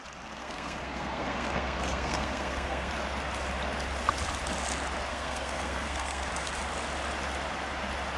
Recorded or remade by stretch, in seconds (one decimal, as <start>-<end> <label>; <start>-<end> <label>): 0.0-0.4 recorded; 0.4-2.9 remade; 2.9-5.1 recorded; 5.1-6.3 remade; 6.3-8.2 recorded

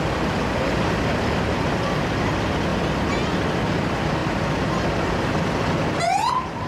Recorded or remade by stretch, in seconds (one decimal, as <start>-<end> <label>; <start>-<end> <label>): 0.0-6.7 recorded

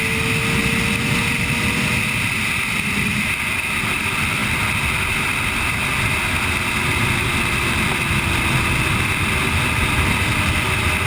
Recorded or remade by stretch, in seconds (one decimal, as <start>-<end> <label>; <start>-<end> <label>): 0.0-11.1 recorded

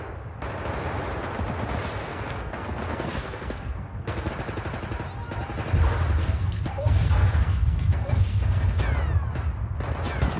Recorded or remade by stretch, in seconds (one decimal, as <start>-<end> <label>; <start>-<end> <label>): 0.0-2.0 recorded; 2.0-4.3 remade; 4.3-6.2 recorded; 6.2-8.8 remade; 8.8-10.4 recorded